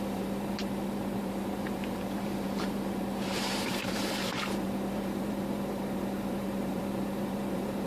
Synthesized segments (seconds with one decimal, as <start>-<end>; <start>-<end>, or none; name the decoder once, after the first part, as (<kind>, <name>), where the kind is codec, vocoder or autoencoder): 0.0-7.9 (vocoder, BigVGAN v2)